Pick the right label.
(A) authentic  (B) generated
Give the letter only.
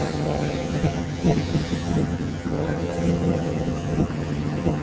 B